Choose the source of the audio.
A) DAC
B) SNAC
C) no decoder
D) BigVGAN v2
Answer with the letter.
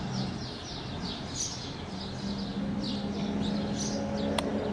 C